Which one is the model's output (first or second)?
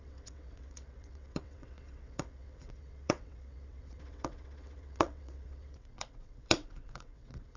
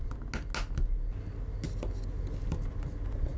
first